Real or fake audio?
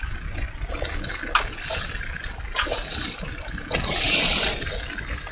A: real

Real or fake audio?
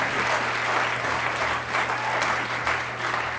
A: real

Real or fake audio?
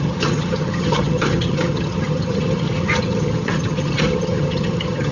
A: fake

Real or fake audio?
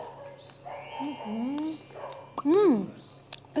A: real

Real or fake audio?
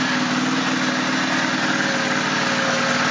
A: real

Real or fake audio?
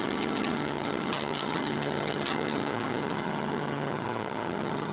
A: fake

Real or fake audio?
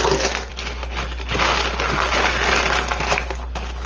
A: real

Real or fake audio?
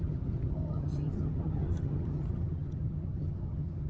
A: fake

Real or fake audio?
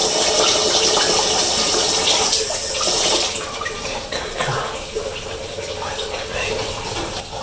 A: real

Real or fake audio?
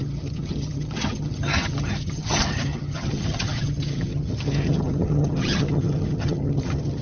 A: fake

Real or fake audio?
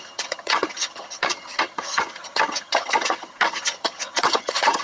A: fake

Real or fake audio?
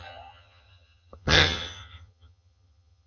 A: fake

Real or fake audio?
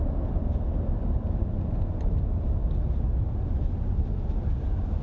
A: real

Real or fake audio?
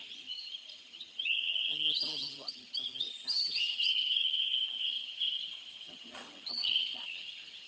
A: fake